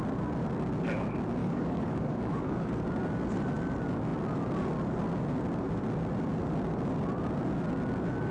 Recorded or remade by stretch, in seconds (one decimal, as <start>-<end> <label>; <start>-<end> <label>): 0.0-1.4 recorded; 1.4-2.7 remade; 2.7-8.3 recorded